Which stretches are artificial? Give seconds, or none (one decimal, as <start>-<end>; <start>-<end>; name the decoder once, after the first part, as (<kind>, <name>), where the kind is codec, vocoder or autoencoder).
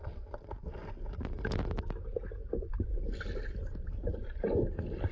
none